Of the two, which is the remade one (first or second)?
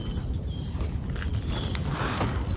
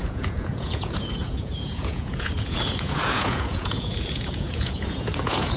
second